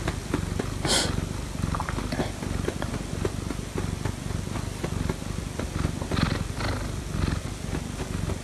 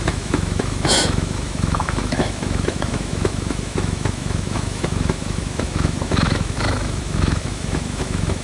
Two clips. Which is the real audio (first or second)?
first